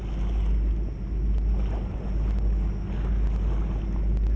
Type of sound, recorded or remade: recorded